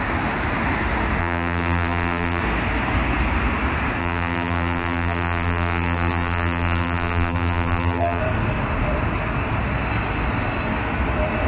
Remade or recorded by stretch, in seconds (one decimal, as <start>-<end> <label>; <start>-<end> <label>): 0.0-1.2 recorded; 1.2-2.4 remade; 2.4-4.0 recorded; 4.0-8.2 remade; 8.2-11.5 recorded